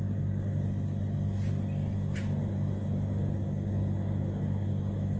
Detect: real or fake real